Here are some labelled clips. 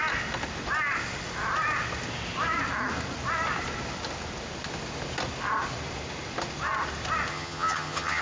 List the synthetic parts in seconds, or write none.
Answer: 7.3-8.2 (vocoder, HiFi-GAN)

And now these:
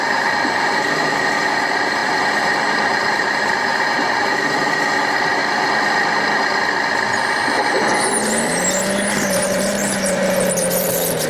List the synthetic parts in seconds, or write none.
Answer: 0.0-5.4 (vocoder, BigVGAN v2); 9.1-11.3

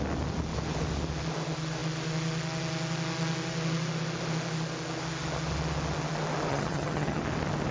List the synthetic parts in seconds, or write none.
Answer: 6.5-7.2 (vocoder, HiFi-GAN)

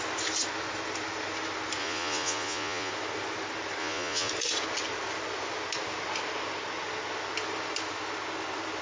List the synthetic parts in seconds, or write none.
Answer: 1.8-2.9 (vocoder, Vocos); 3.8-4.3